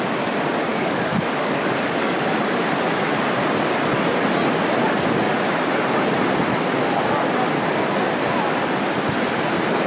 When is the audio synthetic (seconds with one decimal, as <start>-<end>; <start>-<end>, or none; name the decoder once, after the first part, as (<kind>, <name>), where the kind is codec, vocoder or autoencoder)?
0.7-2.6 (codec, DAC)